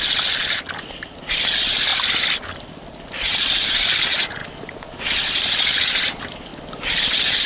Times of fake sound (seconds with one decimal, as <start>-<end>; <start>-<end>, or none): none